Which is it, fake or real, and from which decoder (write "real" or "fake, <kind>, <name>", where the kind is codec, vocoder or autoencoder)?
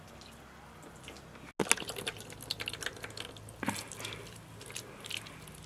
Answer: real